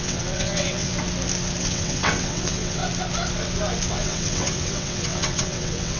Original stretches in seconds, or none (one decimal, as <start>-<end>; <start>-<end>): 0.9-1.6; 2.8-3.9